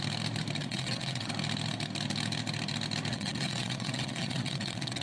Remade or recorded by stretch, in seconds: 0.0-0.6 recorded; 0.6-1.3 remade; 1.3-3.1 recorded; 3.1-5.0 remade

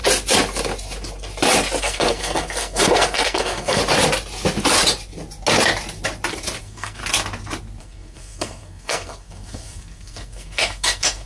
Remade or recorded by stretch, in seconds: 0.0-1.8 recorded; 1.8-3.8 remade; 3.8-6.6 recorded; 6.6-7.0 remade; 7.0-7.8 recorded; 7.8-11.3 remade

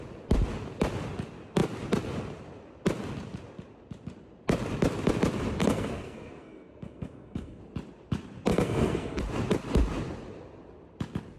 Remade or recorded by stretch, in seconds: 0.0-5.6 recorded; 5.6-7.6 remade; 7.6-8.5 recorded; 8.5-9.2 remade; 9.2-11.4 recorded